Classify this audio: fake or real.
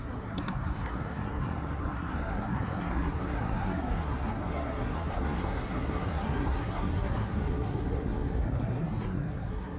fake